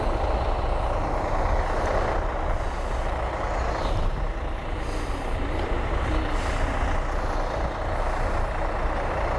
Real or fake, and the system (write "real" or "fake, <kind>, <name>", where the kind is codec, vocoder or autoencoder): real